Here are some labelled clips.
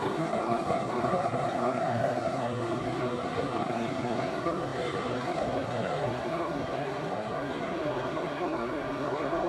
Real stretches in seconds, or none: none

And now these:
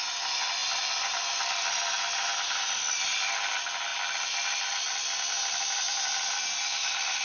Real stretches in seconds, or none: 0.0-7.2

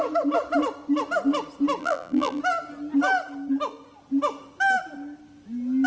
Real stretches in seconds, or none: 0.0-1.8; 2.4-5.9